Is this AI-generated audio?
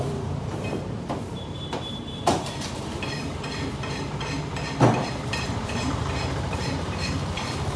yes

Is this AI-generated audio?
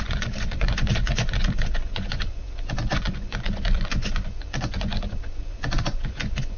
yes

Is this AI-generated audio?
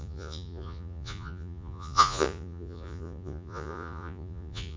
yes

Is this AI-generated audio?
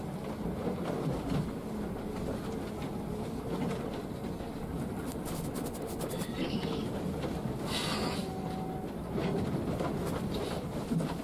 no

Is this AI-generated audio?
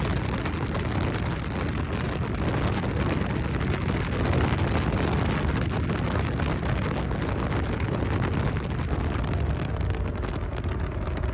no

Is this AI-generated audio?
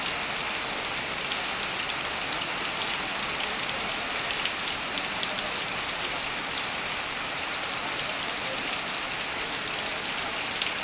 no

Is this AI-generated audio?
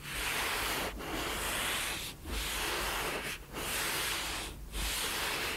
no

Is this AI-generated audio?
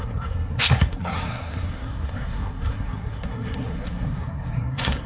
yes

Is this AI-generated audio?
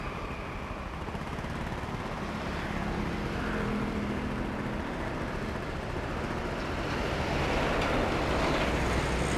no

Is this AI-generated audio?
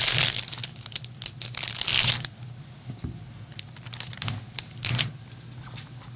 no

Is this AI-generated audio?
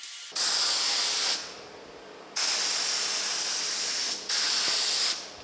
no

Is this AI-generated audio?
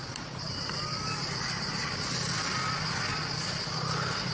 no